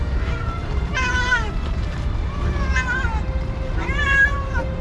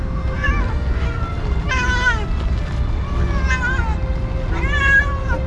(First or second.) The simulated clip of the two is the first